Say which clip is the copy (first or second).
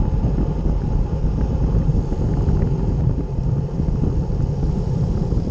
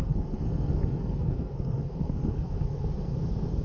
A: second